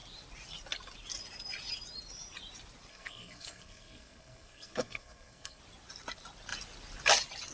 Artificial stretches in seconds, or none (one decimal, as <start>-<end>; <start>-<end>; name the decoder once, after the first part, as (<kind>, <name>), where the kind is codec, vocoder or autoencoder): 2.9-5.6 (codec, SNAC)